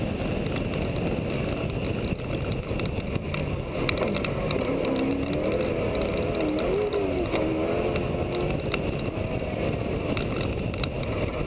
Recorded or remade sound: recorded